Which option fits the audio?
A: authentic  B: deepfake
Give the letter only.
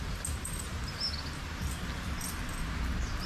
A